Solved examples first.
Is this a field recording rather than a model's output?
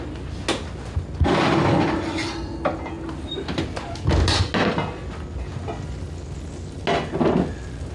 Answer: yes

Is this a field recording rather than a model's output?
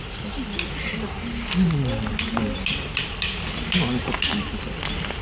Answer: yes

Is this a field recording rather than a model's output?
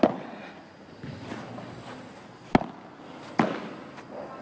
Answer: yes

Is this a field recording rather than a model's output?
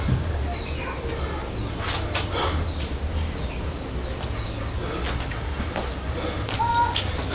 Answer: yes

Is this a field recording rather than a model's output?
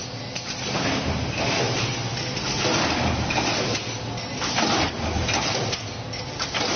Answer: yes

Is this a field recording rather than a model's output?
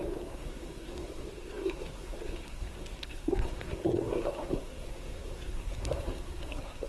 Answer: no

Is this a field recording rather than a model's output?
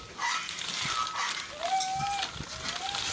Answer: yes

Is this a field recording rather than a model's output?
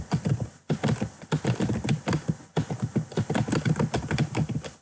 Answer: yes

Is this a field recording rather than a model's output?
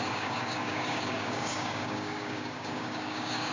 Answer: no